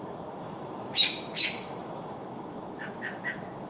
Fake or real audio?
fake